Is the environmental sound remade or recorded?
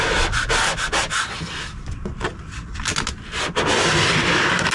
recorded